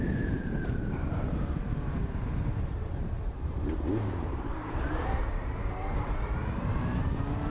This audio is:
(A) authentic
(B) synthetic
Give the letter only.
B